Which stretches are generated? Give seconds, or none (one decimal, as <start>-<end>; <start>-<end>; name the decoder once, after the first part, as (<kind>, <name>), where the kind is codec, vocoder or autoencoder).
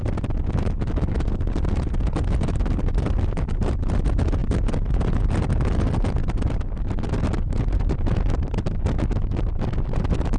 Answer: none